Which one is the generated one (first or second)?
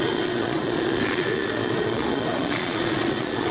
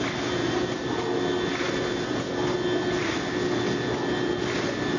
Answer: first